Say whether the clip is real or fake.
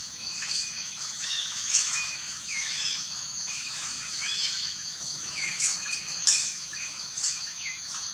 fake